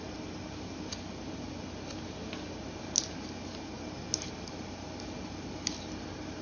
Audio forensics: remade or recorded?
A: recorded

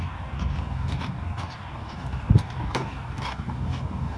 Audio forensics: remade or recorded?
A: remade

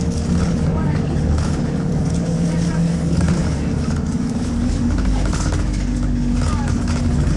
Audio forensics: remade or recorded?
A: remade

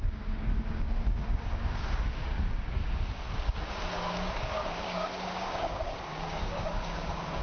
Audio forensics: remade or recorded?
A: remade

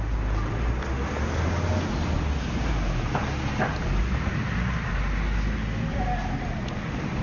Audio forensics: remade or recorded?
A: recorded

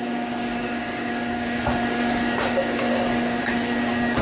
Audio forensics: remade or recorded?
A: remade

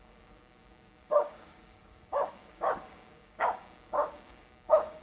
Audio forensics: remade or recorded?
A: remade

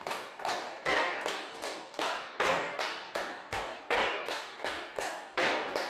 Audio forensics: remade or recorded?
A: remade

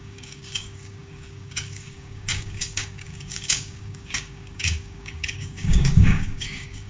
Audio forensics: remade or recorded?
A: remade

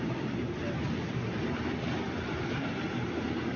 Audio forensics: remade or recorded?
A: recorded